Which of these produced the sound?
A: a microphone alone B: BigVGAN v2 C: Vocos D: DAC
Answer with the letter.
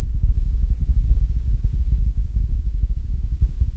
D